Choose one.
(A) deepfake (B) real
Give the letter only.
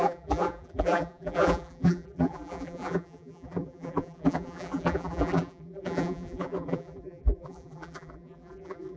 A